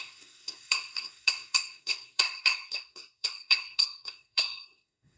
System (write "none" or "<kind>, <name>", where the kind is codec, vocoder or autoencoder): codec, SNAC